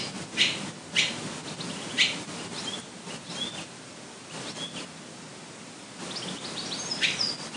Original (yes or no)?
yes